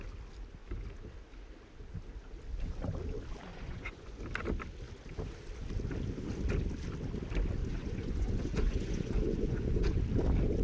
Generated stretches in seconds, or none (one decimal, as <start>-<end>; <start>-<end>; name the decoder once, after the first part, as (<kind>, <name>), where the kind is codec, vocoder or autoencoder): 3.5-4.2 (vocoder, Vocos); 7.6-10.0